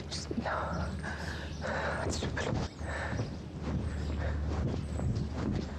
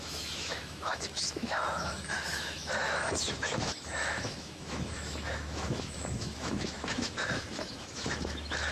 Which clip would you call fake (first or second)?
second